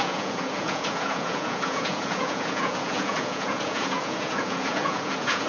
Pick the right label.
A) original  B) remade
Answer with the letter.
B